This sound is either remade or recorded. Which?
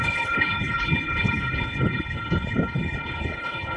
remade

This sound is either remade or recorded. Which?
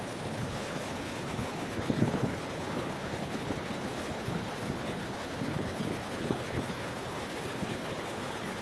remade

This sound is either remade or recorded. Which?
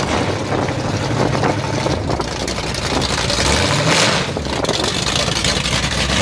recorded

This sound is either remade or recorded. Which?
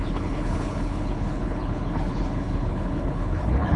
remade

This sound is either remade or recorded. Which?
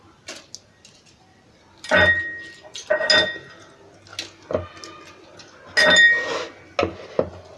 recorded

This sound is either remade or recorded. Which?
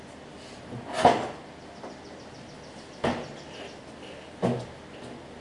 recorded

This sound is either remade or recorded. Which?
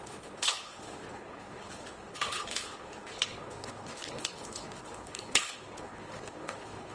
remade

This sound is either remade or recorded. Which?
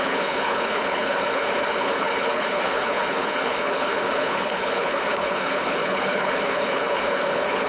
remade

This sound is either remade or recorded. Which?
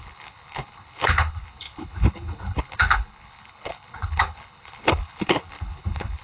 remade